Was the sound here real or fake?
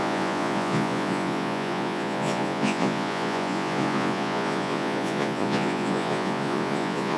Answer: fake